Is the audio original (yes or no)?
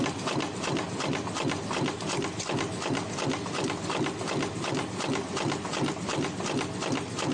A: yes